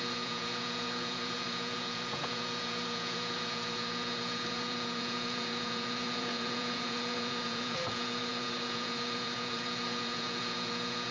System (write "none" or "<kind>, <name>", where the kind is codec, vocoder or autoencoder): vocoder, Vocos